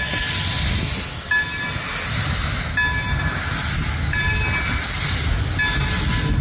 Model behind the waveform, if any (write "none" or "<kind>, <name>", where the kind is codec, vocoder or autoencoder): none